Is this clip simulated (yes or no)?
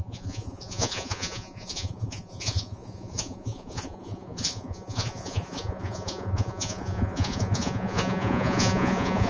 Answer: yes